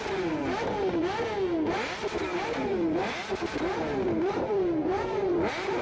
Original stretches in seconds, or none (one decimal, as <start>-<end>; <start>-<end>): 0.0-2.3